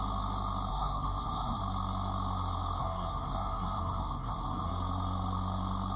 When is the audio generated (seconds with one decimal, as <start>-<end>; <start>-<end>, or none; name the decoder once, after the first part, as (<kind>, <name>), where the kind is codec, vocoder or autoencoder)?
0.7-1.6 (codec, SNAC); 2.8-4.7